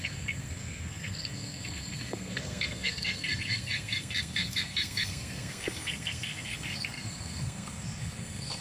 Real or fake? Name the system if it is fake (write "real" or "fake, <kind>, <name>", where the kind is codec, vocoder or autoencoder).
fake, codec, SNAC